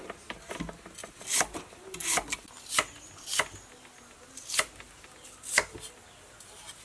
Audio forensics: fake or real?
real